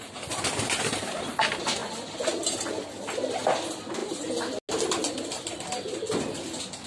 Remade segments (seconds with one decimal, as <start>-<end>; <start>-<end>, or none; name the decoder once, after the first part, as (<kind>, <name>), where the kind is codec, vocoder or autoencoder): none